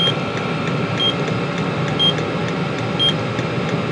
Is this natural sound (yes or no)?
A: yes